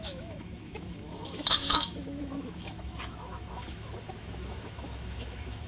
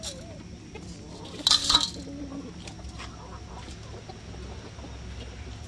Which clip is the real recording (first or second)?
second